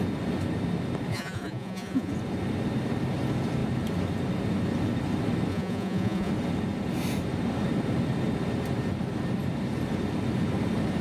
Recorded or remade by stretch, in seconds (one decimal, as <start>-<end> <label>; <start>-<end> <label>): 0.0-1.1 recorded; 1.1-2.1 remade; 2.1-5.5 recorded; 5.5-6.3 remade; 6.3-11.0 recorded